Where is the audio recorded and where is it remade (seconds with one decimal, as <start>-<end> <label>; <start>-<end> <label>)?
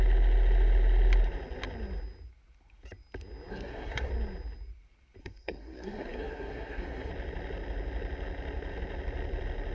0.0-3.5 recorded; 3.5-4.1 remade; 4.1-5.2 recorded; 5.2-7.1 remade; 7.1-9.7 recorded